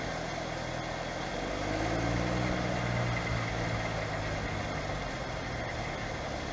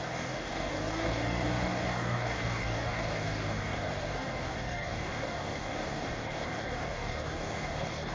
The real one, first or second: first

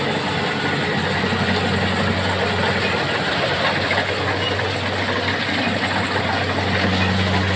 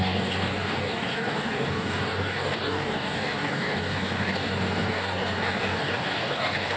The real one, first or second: first